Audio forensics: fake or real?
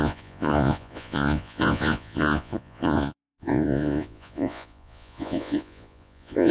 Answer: fake